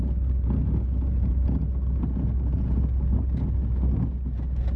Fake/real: real